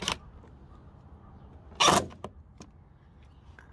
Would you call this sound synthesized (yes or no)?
no